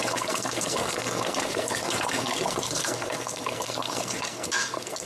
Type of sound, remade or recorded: remade